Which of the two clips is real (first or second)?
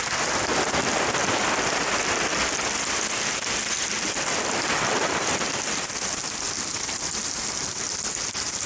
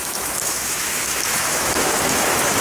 first